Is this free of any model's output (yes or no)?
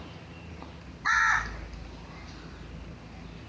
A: yes